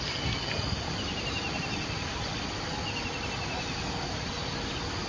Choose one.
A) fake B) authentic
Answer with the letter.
B